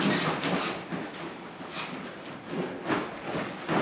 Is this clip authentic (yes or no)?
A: yes